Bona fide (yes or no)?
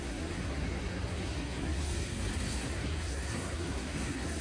no